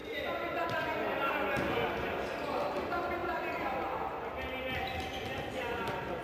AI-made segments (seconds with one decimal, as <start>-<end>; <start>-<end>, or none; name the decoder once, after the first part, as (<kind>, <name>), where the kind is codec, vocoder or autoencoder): none

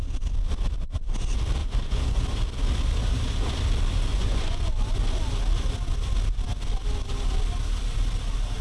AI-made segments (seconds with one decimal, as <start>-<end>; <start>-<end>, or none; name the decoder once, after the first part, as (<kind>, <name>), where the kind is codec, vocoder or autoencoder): 1.6-2.2 (vocoder, Vocos); 4.1-4.8

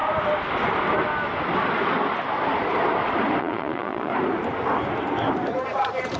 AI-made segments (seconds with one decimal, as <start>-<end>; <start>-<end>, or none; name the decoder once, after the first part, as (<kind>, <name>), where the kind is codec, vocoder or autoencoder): 3.4-4.1 (vocoder, Vocos)

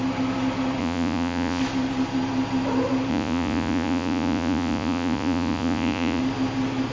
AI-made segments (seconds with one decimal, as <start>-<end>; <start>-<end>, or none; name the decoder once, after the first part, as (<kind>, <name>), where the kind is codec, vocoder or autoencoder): 0.8-1.6 (vocoder, Vocos); 3.1-6.2

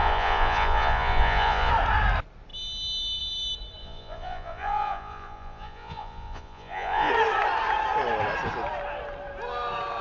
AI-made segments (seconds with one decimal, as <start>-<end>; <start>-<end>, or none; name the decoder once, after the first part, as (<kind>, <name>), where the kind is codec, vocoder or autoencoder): 0.0-1.7 (vocoder, Vocos); 3.8-7.1

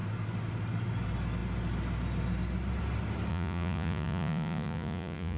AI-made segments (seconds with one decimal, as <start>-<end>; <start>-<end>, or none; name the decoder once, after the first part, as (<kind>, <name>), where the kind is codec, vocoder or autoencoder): 3.3-5.4 (vocoder, Vocos)

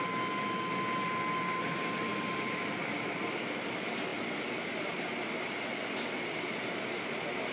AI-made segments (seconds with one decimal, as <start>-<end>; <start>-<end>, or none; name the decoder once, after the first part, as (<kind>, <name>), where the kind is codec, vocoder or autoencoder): none